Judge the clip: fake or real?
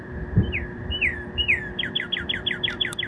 fake